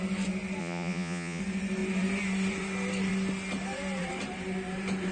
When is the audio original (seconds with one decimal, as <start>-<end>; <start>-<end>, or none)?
0.0-0.6; 1.4-5.1